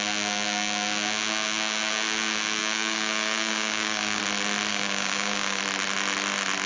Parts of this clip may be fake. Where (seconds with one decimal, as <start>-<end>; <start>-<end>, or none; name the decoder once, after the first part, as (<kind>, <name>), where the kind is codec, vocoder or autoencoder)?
2.6-4.2 (codec, DAC); 4.7-5.6